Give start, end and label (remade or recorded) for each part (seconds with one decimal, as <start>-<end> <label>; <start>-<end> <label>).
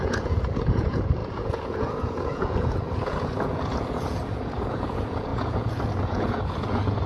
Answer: 0.0-7.1 remade